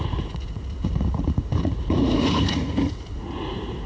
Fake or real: fake